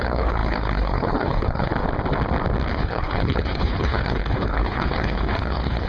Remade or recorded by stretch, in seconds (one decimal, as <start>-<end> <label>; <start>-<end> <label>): 0.0-1.7 remade; 1.7-2.7 recorded; 2.7-5.9 remade